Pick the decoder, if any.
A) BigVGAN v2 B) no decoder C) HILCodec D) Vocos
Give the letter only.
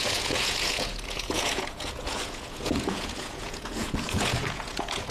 D